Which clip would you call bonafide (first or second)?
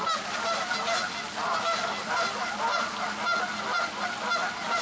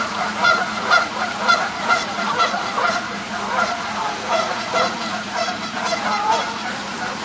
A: first